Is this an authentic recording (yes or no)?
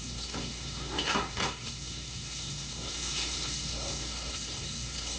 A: no